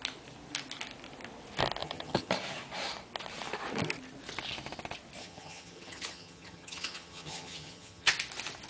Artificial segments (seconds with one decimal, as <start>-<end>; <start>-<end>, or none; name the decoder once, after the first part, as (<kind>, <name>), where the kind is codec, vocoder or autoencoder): 1.8-2.3 (vocoder, HiFi-GAN); 5.2-8.1